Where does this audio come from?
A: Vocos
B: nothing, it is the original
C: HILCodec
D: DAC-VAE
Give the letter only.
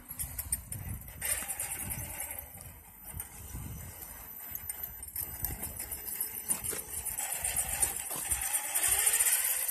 B